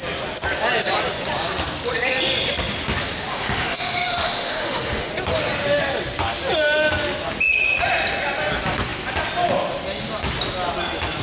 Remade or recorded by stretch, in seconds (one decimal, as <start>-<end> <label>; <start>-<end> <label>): 0.0-3.3 recorded; 3.3-5.1 remade; 5.1-11.2 recorded